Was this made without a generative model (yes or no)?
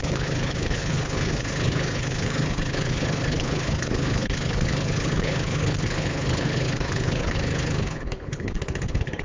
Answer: no